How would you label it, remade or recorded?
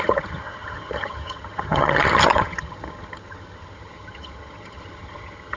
remade